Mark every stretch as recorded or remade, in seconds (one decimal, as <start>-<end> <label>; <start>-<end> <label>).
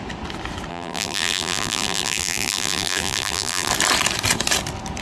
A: 0.0-0.7 recorded; 0.7-3.7 remade; 3.7-5.0 recorded